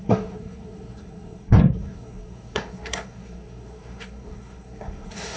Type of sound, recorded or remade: remade